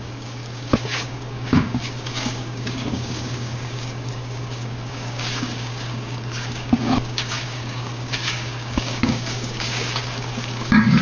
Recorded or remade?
remade